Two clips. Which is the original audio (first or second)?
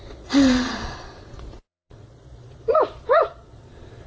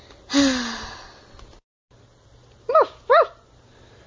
second